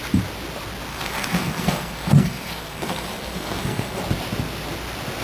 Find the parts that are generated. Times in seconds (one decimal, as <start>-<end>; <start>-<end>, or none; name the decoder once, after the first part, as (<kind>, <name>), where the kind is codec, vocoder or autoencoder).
0.9-4.0 (codec, SNAC)